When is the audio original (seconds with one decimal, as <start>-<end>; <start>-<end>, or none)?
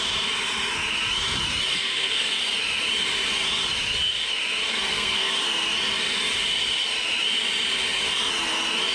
0.0-1.7; 2.4-4.7; 5.3-8.9